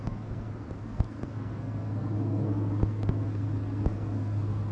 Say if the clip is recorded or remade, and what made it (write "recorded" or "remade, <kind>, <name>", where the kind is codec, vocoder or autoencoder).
remade, codec, SNAC